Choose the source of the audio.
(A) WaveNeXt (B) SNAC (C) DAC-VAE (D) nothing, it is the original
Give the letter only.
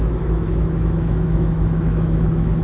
C